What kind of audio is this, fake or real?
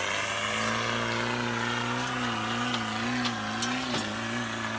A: real